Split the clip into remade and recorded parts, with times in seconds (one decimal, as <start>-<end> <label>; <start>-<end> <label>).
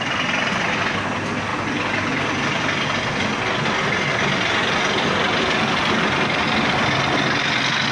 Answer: 0.0-7.9 recorded